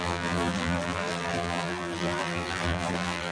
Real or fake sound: fake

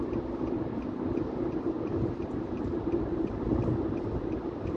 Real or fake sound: real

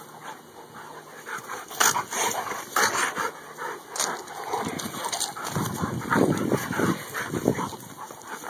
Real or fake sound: real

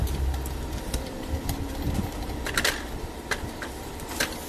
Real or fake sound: fake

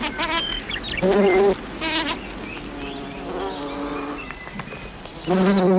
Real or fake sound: real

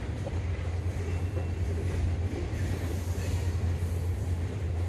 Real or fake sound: fake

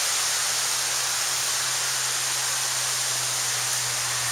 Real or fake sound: real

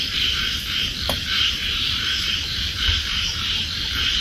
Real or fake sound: fake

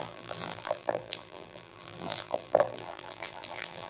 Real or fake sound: fake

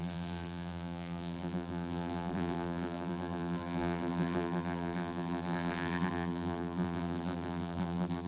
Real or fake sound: fake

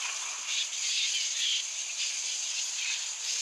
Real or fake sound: real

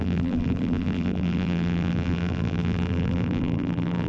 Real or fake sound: fake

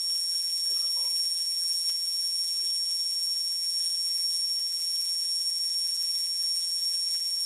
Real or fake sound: fake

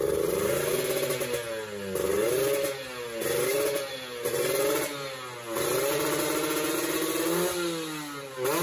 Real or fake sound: real